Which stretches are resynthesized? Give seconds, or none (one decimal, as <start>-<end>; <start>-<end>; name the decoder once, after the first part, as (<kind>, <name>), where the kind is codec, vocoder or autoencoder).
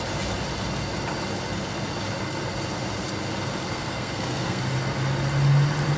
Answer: 3.7-4.6 (codec, SNAC)